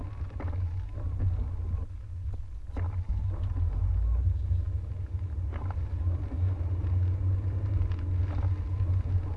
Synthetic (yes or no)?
no